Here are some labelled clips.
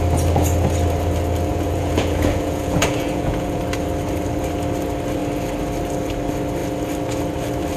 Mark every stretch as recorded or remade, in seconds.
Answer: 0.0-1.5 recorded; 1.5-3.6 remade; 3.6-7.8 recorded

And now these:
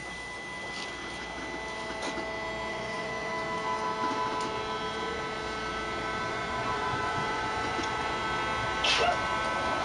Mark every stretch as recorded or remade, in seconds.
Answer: 0.0-2.7 recorded; 2.7-3.3 remade; 3.3-6.3 recorded; 6.3-8.2 remade; 8.2-9.8 recorded

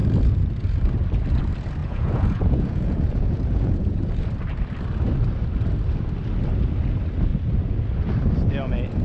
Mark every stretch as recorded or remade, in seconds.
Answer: 0.0-1.8 recorded; 1.8-4.2 remade; 4.2-9.0 recorded

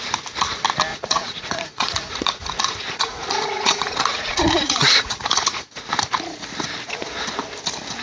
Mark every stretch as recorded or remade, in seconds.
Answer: 0.0-0.9 recorded; 0.9-5.7 remade; 5.7-8.0 recorded

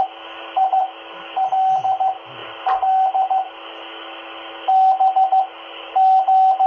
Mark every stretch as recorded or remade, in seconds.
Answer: 0.0-6.7 recorded